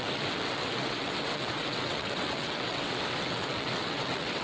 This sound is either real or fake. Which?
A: fake